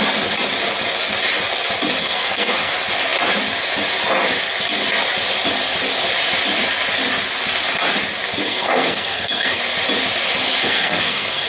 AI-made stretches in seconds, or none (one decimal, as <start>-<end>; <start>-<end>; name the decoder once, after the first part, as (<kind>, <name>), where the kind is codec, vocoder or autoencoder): 2.0-2.7 (codec, SNAC); 8.3-9.6; 10.6-11.5